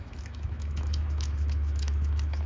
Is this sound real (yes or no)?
no